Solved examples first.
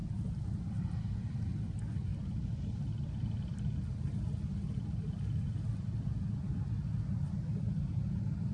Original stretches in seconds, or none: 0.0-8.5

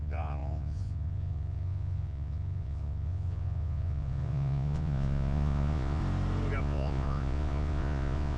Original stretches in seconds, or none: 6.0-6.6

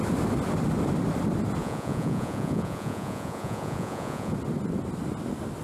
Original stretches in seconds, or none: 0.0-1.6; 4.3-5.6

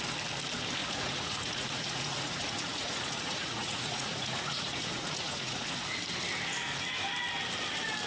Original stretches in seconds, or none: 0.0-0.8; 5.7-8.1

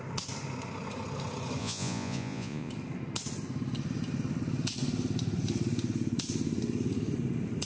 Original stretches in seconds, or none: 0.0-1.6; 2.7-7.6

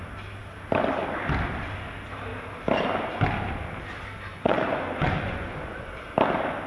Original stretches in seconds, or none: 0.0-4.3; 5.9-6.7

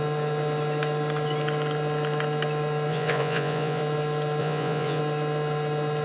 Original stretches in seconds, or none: 0.0-2.9; 3.8-4.4; 5.0-6.0